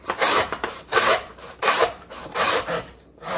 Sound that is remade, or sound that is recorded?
remade